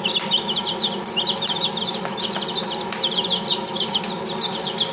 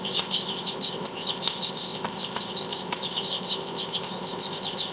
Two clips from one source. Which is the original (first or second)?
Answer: first